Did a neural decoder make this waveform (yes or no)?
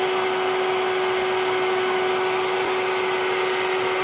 no